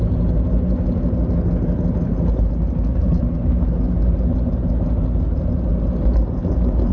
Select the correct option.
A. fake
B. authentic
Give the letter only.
B